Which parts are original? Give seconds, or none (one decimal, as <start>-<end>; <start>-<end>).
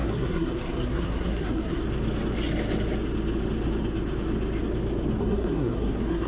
1.8-5.2